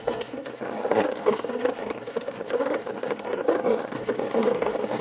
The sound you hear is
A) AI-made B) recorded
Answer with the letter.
A